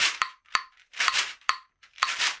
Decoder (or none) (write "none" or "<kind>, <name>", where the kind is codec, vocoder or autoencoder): vocoder, BigVGAN v2